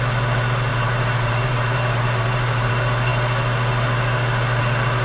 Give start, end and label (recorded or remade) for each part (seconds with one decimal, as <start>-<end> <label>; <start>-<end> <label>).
0.0-0.7 recorded; 0.7-2.7 remade; 2.7-5.0 recorded

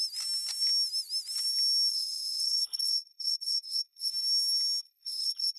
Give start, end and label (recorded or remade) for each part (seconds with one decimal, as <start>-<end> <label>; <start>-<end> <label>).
0.0-1.9 recorded; 1.9-4.1 remade; 4.1-4.8 recorded; 4.8-5.6 remade

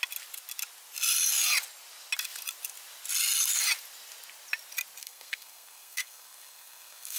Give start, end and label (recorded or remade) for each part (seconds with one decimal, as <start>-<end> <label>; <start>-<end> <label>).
0.0-5.0 recorded; 5.0-7.2 remade

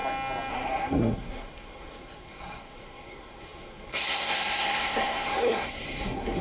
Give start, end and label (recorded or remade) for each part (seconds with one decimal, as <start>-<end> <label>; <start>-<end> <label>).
0.0-0.5 recorded; 0.5-6.4 remade

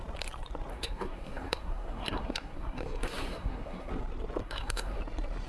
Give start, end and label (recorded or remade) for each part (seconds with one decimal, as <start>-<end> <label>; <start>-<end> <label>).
0.0-0.7 recorded; 0.7-3.9 remade; 3.9-4.4 recorded; 4.4-5.0 remade; 5.0-5.5 recorded

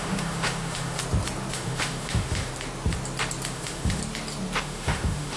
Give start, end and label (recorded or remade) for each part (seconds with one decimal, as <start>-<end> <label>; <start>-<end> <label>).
0.0-1.0 remade; 1.0-1.5 recorded; 1.5-2.5 remade; 2.5-3.5 recorded; 3.5-4.0 remade; 4.0-4.6 recorded; 4.6-5.4 remade

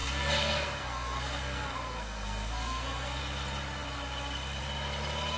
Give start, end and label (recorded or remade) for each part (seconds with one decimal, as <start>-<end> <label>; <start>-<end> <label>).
0.0-3.2 remade; 3.2-5.4 recorded